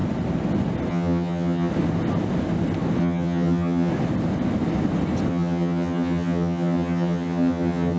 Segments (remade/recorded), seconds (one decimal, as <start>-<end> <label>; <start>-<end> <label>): 0.0-0.9 recorded; 0.9-1.7 remade; 1.7-3.0 recorded; 3.0-3.9 remade; 3.9-5.3 recorded; 5.3-8.0 remade